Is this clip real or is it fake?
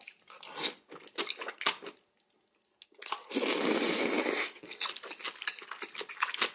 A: real